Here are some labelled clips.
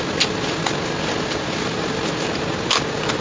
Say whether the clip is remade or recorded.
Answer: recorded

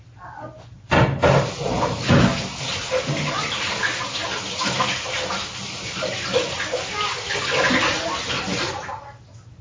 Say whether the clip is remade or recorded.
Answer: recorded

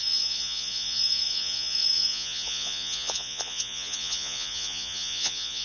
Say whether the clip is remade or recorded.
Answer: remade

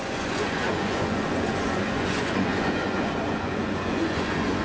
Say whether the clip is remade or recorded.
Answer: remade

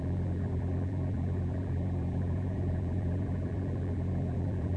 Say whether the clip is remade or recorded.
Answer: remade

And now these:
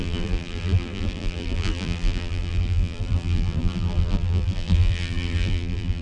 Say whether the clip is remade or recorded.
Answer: remade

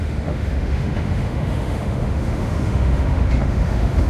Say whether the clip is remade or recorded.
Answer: remade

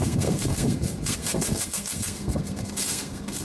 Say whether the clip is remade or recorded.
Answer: remade